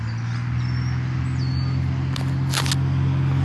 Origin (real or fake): real